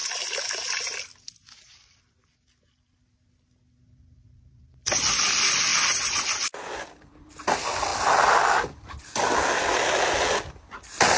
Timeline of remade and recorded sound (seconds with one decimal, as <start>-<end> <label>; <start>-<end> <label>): 0.0-11.2 recorded